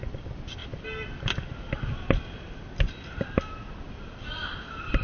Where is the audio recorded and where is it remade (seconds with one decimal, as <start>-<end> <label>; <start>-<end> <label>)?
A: 0.0-5.0 recorded